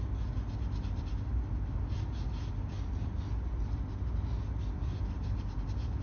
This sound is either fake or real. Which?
real